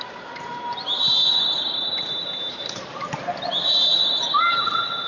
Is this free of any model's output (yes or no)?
yes